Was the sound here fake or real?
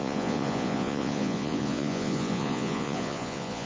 fake